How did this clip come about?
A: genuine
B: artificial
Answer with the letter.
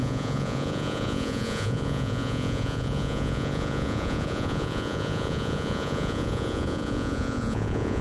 B